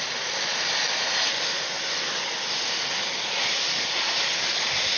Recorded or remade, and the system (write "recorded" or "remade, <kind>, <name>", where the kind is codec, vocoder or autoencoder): recorded